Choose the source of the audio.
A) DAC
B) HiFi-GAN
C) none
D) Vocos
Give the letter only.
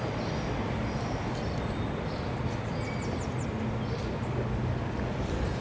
C